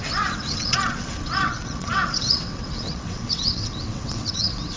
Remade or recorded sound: remade